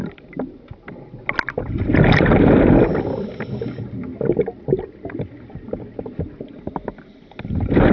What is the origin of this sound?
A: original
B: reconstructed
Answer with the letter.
A